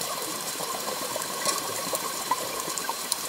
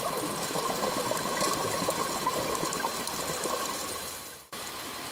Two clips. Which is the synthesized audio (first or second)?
first